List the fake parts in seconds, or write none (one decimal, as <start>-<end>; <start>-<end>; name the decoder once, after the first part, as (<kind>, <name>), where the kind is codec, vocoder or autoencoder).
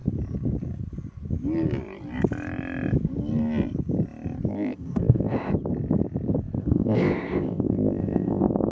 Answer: 4.5-5.5 (codec, ZipCodec); 6.6-8.7